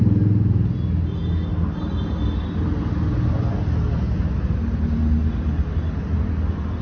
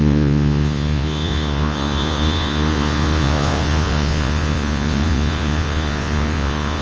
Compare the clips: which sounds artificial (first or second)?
second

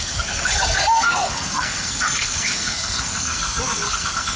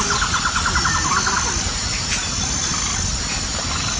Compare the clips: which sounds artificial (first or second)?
first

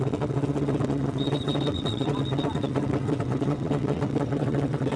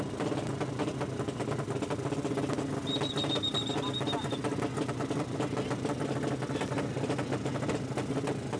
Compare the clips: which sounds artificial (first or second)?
first